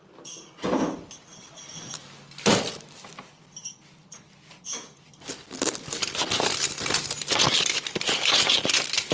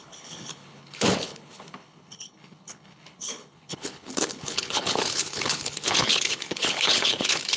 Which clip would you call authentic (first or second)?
first